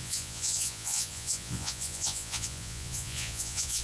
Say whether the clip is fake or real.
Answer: fake